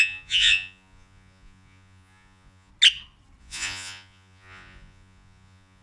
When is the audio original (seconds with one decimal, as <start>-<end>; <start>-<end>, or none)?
2.7-3.4